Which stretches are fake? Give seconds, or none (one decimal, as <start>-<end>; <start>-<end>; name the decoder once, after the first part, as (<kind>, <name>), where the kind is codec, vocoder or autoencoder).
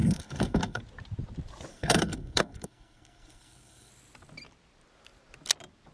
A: 0.0-0.8 (codec, SNAC); 1.7-3.9